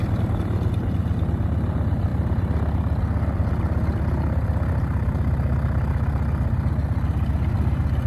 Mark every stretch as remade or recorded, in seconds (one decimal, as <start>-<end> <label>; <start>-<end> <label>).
0.0-8.1 recorded